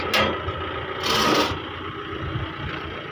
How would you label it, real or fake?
real